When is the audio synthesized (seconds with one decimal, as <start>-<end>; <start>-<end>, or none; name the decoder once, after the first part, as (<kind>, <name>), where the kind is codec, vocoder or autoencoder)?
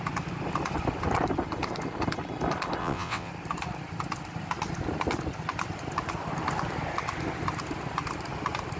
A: 2.8-3.3 (vocoder, WaveNeXt)